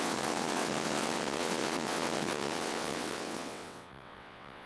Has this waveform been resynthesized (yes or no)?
yes